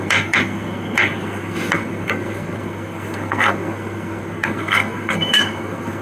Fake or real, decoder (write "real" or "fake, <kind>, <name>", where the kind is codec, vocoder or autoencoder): fake, codec, SNAC